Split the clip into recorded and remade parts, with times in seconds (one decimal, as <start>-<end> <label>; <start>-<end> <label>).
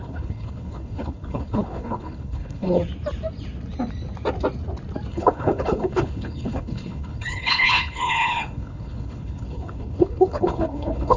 0.0-2.8 remade; 2.8-5.1 recorded; 5.1-11.2 remade